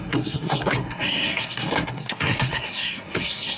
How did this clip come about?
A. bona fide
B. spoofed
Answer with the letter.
B